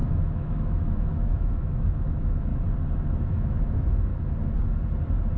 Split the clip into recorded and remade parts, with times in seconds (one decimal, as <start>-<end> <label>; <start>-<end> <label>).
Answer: 0.0-2.5 remade; 2.5-3.1 recorded; 3.1-4.1 remade; 4.1-5.4 recorded